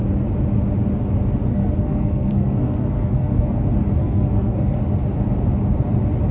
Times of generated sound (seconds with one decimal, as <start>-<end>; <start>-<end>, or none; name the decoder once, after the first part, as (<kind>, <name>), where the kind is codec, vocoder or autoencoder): 1.5-3.6 (codec, SNAC); 4.0-4.8